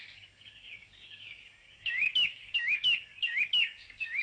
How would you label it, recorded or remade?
remade